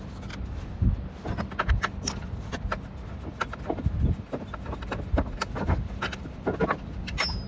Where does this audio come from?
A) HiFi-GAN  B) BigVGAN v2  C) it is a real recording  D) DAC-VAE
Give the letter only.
C